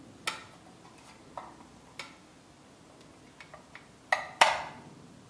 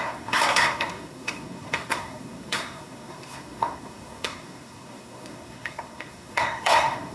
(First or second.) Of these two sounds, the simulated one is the second